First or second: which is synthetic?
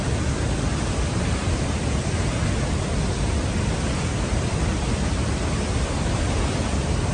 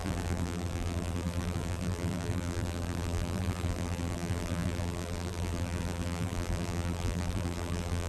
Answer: second